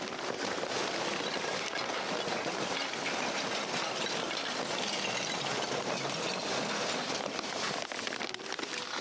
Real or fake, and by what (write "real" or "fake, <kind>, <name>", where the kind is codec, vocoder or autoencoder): real